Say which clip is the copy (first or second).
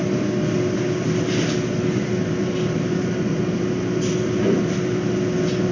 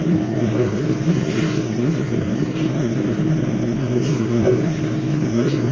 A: second